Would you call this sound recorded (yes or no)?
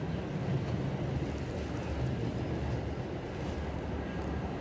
yes